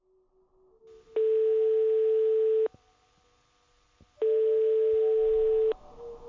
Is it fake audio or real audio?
real